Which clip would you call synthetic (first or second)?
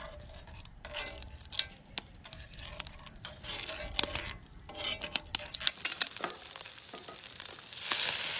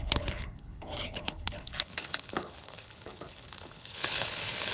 second